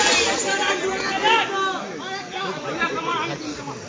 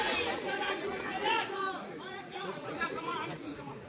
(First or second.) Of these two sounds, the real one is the first